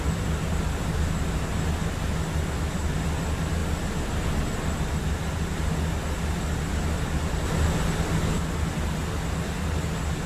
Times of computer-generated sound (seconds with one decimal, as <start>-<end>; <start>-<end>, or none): none